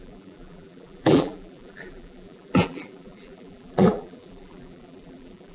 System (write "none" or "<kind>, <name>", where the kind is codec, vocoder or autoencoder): vocoder, BigVGAN v2